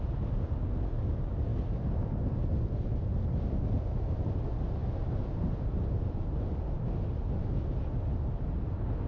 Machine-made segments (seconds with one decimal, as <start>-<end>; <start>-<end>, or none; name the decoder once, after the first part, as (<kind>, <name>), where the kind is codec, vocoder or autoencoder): none